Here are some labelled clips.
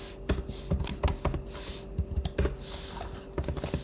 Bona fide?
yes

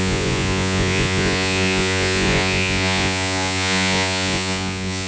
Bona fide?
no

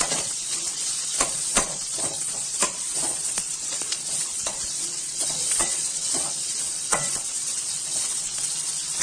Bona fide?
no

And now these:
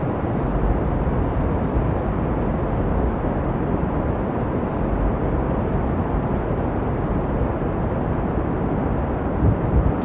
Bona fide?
yes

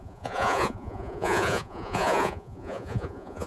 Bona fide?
no